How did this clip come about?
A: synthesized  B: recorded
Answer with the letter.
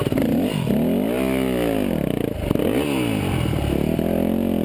B